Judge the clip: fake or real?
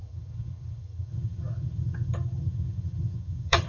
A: fake